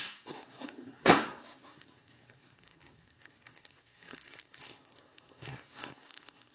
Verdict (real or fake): fake